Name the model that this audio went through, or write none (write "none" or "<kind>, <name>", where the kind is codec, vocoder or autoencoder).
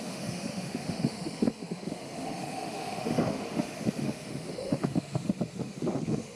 autoencoder, DAC-VAE